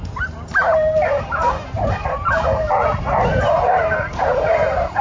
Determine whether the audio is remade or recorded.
remade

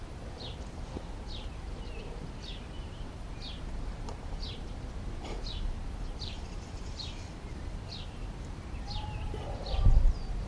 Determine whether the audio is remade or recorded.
remade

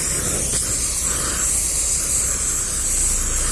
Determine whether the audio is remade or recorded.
recorded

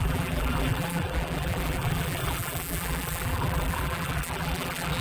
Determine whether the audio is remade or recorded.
remade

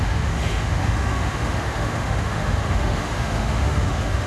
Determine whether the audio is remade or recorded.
remade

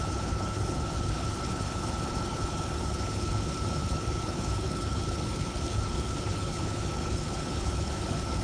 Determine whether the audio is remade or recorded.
remade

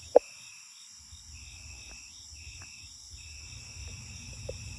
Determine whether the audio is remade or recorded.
recorded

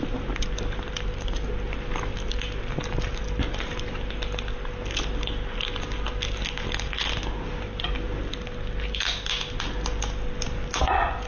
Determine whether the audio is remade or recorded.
recorded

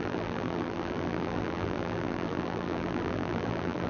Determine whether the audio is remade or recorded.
remade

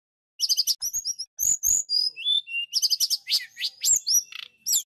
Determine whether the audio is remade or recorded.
recorded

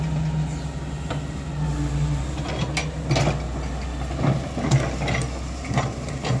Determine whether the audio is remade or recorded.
recorded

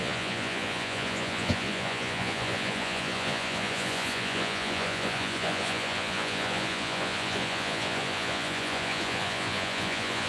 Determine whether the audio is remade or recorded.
remade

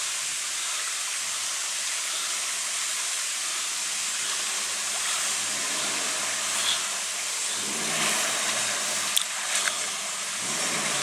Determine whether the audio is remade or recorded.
recorded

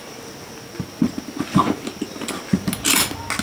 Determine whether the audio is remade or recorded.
recorded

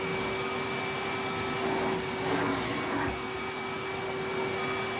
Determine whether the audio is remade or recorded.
recorded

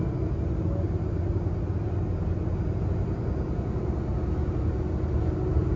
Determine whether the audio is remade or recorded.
recorded